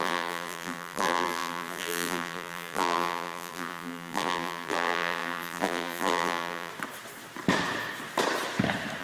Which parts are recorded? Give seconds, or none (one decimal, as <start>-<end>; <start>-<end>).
6.7-9.0